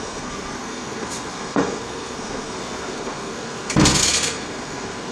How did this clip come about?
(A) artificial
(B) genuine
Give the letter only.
A